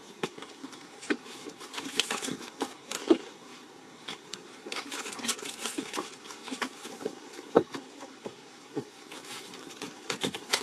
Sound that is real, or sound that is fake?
fake